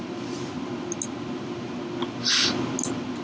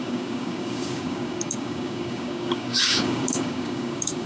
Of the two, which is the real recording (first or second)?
first